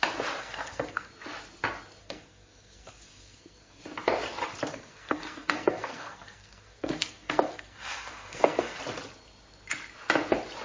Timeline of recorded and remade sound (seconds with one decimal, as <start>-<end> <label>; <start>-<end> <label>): 0.0-0.4 recorded; 0.4-1.1 remade; 1.1-2.0 recorded; 2.0-3.8 remade; 3.8-4.7 recorded; 4.7-8.8 remade; 8.8-10.6 recorded